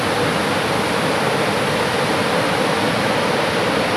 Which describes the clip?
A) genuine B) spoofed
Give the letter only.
A